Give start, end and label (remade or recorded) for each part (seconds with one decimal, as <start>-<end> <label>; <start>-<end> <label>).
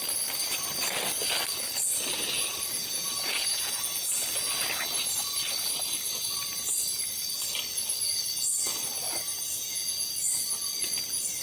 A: 0.0-2.8 recorded; 2.8-4.2 remade; 4.2-9.3 recorded; 9.3-10.1 remade; 10.1-11.4 recorded